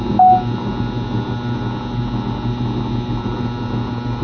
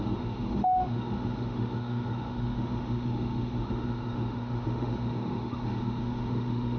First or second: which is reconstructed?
second